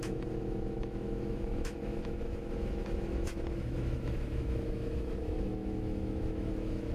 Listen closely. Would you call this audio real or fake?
fake